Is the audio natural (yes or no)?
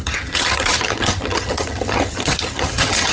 no